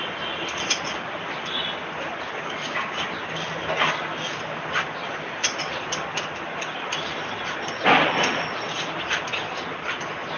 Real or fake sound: real